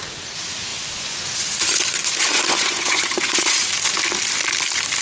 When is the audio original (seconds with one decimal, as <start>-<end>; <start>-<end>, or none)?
0.0-0.7; 3.7-5.0